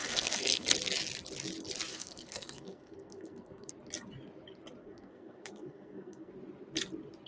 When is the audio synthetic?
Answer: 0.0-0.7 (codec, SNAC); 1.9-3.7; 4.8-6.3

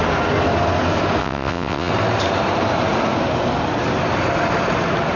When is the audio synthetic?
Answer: 1.2-1.9 (vocoder, WaveNeXt)

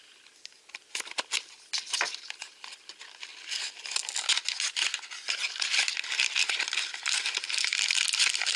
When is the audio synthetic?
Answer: none

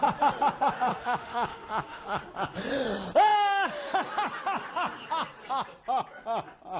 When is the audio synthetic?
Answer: 0.9-2.2 (autoencoder, DAC-VAE)